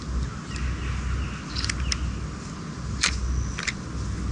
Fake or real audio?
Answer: real